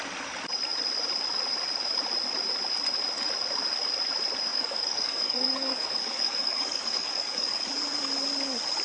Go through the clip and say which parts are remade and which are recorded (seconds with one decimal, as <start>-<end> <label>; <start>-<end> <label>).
0.0-4.5 recorded; 4.5-7.7 remade; 7.7-8.8 recorded

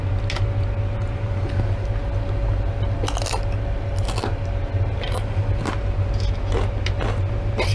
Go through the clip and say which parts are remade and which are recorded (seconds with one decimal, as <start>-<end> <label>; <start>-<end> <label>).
0.0-7.7 recorded